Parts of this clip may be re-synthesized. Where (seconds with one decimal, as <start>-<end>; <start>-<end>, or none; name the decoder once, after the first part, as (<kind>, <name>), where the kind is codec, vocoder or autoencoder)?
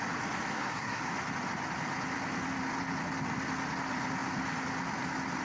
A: 0.5-1.0 (codec, SNAC)